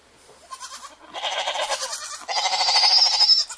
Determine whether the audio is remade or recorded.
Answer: recorded